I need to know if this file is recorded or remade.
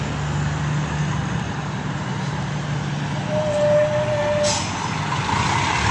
recorded